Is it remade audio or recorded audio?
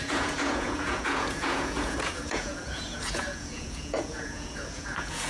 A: remade